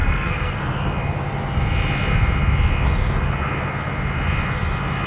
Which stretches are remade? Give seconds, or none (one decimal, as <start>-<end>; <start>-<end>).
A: 0.0-0.6